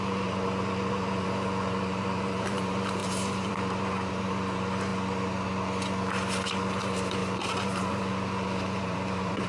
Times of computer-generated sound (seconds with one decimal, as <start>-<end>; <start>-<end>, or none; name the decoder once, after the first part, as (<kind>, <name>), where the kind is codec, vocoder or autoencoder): 0.0-4.9 (vocoder, BigVGAN v2); 6.8-9.5